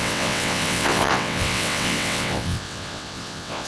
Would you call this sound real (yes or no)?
no